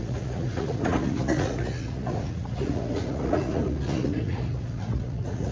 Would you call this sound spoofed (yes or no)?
yes